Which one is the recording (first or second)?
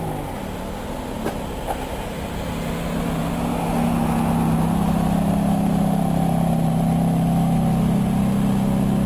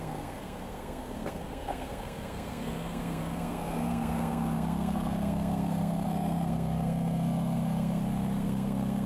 first